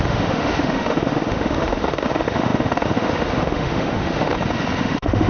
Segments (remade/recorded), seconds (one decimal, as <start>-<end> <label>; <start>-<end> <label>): 0.0-4.3 remade; 4.3-4.8 recorded; 4.8-5.3 remade